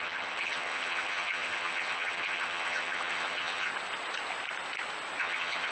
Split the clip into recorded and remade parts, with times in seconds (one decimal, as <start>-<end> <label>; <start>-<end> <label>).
0.0-3.7 remade; 3.7-5.2 recorded; 5.2-5.7 remade